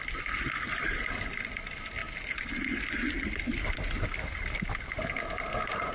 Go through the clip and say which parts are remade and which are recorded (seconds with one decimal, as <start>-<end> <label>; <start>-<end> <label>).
0.0-5.9 recorded